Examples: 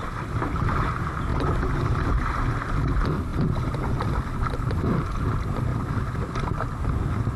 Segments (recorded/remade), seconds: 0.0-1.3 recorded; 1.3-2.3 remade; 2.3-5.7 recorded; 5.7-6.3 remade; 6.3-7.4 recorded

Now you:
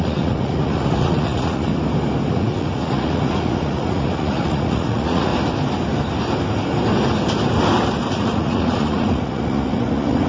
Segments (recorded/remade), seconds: 0.0-1.7 remade; 1.7-2.3 recorded; 2.3-5.3 remade; 5.3-8.1 recorded; 8.1-10.3 remade

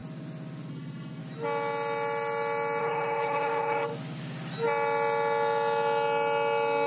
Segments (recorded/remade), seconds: 0.0-0.7 recorded; 0.7-1.2 remade; 1.2-2.8 recorded; 2.8-3.9 remade; 3.9-6.9 recorded

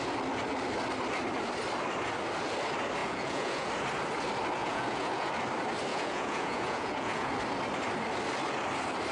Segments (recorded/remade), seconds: 0.0-3.0 recorded; 3.0-3.7 remade; 3.7-4.6 recorded; 4.6-5.3 remade; 5.3-5.9 recorded; 5.9-7.3 remade; 7.3-9.1 recorded

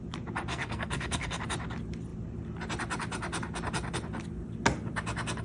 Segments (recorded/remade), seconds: 0.0-0.5 recorded; 0.5-1.4 remade; 1.4-5.4 recorded

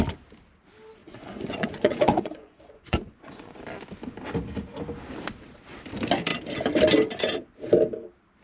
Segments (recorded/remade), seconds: 0.0-1.0 recorded; 1.0-3.6 remade; 3.6-8.4 recorded